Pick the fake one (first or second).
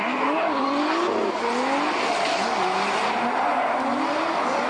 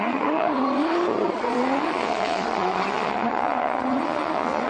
second